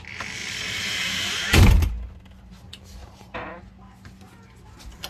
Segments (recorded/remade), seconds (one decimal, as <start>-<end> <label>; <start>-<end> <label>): 0.0-0.4 recorded; 0.4-1.9 remade; 1.9-3.0 recorded; 3.0-3.7 remade; 3.7-5.1 recorded